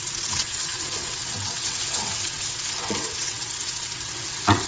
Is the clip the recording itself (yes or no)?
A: no